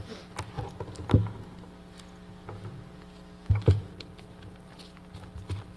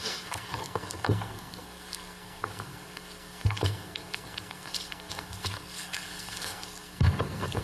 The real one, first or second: first